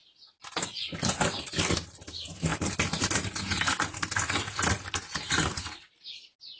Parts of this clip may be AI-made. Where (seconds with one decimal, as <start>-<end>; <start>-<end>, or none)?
none